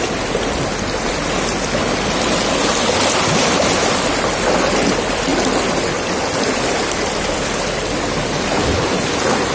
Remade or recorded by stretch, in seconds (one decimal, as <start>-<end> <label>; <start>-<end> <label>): 0.0-9.5 recorded